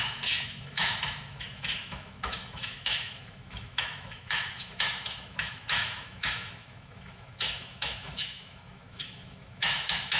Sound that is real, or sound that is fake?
fake